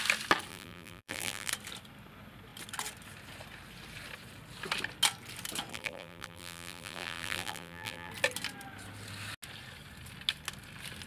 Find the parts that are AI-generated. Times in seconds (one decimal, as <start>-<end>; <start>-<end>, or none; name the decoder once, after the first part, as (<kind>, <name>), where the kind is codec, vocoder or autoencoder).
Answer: 0.5-1.5 (vocoder, BigVGAN v2); 5.7-8.1